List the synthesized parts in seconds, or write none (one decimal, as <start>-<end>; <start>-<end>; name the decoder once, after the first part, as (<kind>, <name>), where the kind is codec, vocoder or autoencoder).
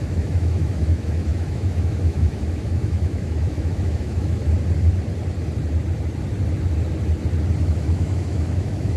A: 0.0-4.4 (autoencoder, DAC-VAE); 7.6-9.0